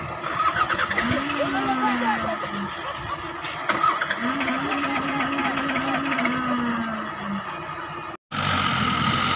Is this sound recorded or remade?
recorded